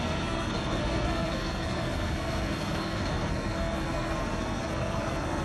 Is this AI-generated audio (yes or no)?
yes